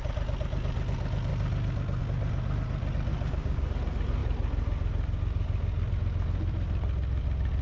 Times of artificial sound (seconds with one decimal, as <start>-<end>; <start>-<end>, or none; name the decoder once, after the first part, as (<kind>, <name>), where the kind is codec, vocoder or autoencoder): 3.1-3.8 (codec, DAC)